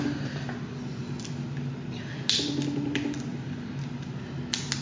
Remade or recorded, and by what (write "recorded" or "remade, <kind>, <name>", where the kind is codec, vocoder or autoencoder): recorded